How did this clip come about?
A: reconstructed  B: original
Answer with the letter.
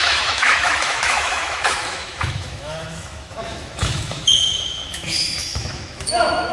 A